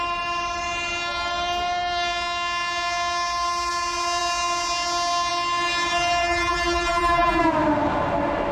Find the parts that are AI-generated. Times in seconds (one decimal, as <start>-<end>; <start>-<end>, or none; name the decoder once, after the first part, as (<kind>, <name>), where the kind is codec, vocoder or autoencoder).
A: 6.2-7.4 (vocoder, BigVGAN v2)